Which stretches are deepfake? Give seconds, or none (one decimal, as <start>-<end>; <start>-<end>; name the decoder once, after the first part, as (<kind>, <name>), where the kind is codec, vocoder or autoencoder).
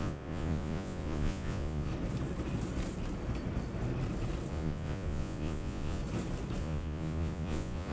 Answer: 0.0-1.9 (vocoder, Vocos); 4.5-6.0; 6.6-7.9